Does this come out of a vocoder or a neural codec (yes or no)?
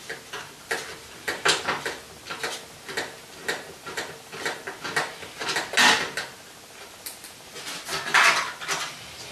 no